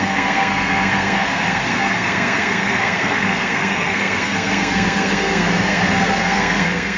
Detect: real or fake fake